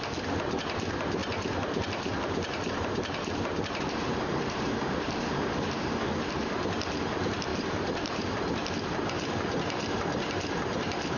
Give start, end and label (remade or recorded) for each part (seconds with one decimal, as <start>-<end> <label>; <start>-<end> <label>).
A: 0.0-1.2 recorded; 1.2-6.0 remade; 6.0-7.5 recorded; 7.5-8.7 remade; 8.7-11.2 recorded